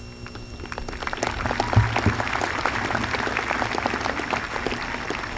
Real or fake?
real